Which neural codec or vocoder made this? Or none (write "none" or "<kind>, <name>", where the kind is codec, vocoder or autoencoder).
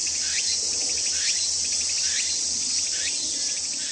none